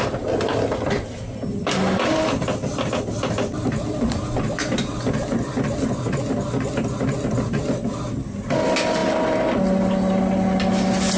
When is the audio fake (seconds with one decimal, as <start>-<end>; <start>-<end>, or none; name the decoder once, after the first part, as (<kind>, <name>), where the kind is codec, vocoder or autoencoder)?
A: none

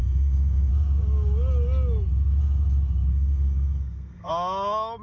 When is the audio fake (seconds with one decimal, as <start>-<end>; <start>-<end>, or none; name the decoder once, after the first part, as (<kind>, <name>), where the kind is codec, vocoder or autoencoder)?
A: 0.0-0.7 (codec, SNAC); 3.1-4.3

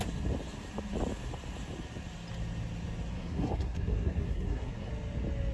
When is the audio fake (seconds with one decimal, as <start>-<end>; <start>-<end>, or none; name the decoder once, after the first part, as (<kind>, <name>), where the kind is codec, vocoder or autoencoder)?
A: 3.1-4.9 (codec, SNAC)

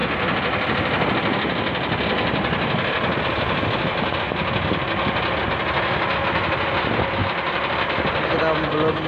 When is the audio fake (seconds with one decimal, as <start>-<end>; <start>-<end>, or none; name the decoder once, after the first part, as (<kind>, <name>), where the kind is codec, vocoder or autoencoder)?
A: 7.2-8.3 (vocoder, BigVGAN v2)